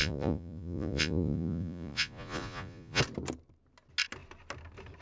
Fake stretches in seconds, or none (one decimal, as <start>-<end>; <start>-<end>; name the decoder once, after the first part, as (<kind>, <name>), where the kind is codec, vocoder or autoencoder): 0.0-3.0 (vocoder, Vocos)